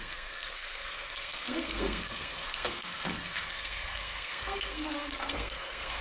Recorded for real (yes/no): no